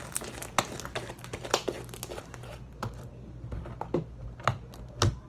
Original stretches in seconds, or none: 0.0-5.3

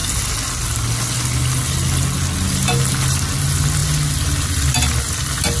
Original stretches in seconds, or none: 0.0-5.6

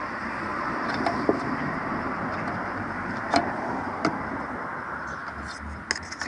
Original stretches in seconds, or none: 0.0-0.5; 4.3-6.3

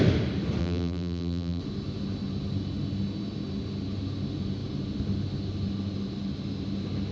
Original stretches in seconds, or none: 0.0-0.6; 1.6-7.1

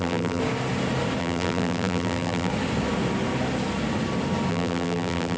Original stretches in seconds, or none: 0.4-1.2; 2.5-4.5